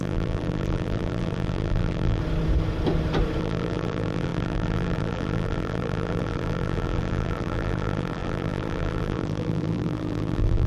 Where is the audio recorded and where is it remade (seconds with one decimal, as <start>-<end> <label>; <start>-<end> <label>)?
0.0-2.2 remade; 2.2-3.4 recorded; 3.4-10.7 remade